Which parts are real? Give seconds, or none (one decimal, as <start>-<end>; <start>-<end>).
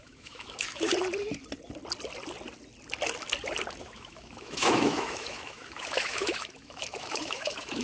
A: 0.9-3.8